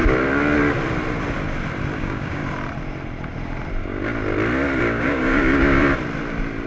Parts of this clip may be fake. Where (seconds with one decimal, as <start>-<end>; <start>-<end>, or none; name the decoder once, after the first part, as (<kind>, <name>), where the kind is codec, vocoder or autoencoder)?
2.0-2.4 (codec, DAC); 4.8-5.8